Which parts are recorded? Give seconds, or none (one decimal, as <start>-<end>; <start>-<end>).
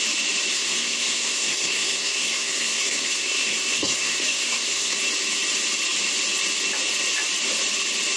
0.0-0.5; 5.0-8.2